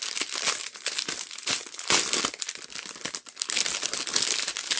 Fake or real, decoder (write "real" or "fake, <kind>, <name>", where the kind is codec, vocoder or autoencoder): real